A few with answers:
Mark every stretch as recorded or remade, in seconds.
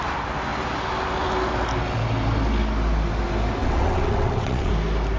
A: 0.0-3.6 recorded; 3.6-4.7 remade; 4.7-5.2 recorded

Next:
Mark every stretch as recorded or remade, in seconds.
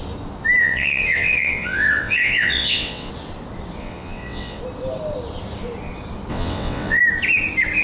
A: 0.0-0.6 recorded; 0.6-3.1 remade; 3.1-3.8 recorded; 3.8-4.6 remade; 4.6-6.3 recorded; 6.3-7.0 remade; 7.0-7.8 recorded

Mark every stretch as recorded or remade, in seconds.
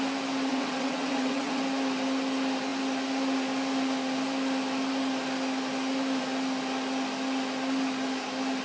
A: 0.0-0.5 recorded; 0.5-1.6 remade; 1.6-8.6 recorded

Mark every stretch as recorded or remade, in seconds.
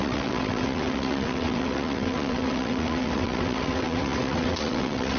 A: 0.0-5.2 remade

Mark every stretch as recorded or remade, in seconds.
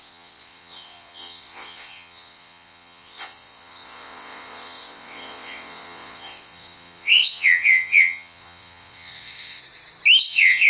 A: 0.0-9.6 remade; 9.6-10.2 recorded; 10.2-10.7 remade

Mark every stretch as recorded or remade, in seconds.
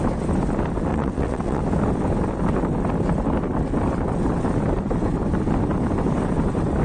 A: 0.0-0.9 recorded; 0.9-1.6 remade; 1.6-6.8 recorded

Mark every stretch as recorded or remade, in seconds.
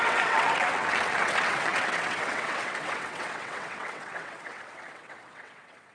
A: 0.0-5.9 remade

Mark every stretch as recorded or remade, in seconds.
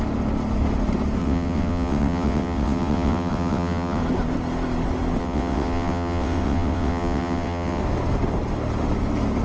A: 0.0-1.2 recorded; 1.2-4.0 remade; 4.0-5.2 recorded; 5.2-7.8 remade; 7.8-9.4 recorded